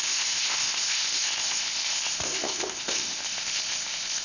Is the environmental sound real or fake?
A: fake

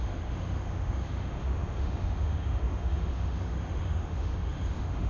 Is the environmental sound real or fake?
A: fake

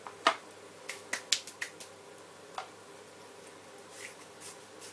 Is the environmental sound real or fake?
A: real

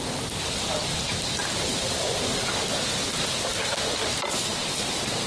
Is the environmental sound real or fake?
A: real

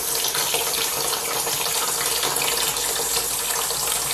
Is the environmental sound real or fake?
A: real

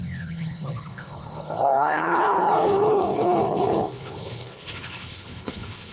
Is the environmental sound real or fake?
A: fake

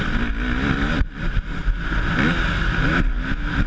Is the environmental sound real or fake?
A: real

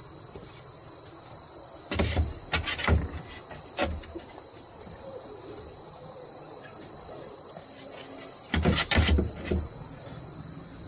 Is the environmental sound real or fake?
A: real